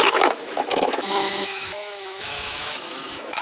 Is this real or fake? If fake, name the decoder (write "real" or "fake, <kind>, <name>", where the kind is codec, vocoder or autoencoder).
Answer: fake, autoencoder, DAC-VAE